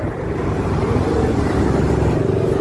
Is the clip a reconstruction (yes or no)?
yes